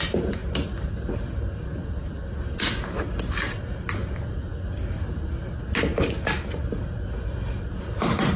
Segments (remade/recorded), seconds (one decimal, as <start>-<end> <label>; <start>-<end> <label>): 0.0-8.4 recorded